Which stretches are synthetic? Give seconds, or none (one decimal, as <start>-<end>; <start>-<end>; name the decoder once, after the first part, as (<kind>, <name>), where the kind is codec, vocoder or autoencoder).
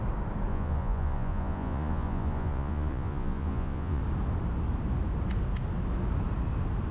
0.5-4.0 (vocoder, Vocos)